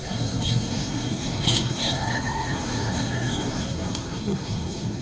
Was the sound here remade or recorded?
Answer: remade